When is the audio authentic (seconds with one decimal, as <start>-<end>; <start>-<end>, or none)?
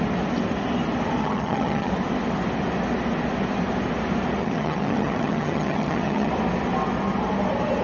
0.0-1.2; 1.9-4.4; 6.3-7.8